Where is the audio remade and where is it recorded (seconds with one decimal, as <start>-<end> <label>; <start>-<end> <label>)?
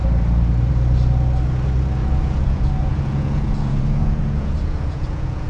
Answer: 0.0-2.0 recorded; 2.0-5.5 remade